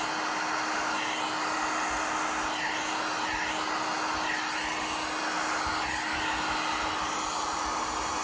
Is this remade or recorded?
recorded